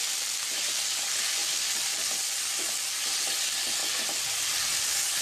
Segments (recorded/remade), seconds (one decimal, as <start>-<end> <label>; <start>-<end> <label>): 0.0-5.2 recorded